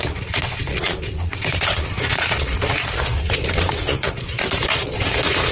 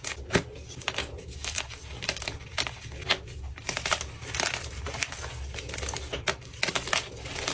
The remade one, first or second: first